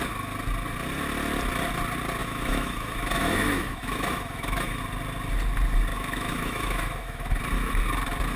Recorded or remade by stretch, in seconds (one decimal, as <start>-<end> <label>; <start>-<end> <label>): 0.0-2.2 recorded; 2.2-4.8 remade; 4.8-5.9 recorded; 5.9-7.4 remade; 7.4-8.4 recorded